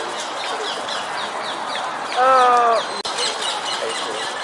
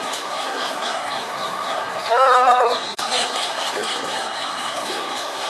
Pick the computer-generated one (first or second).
second